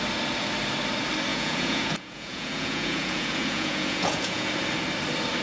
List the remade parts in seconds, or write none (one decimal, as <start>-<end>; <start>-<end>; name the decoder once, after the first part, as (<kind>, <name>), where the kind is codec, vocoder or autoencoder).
1.3-4.5 (vocoder, Vocos)